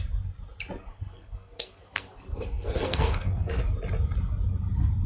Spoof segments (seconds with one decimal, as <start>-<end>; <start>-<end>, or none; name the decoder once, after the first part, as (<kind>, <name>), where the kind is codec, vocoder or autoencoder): 0.9-3.6 (codec, SNAC)